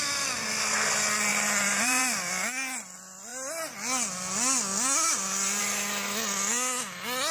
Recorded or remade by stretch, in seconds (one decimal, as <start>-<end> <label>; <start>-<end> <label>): 0.0-1.3 recorded; 1.3-2.0 remade; 2.0-7.3 recorded